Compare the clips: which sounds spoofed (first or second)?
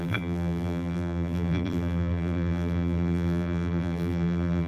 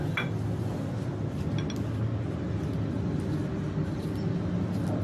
first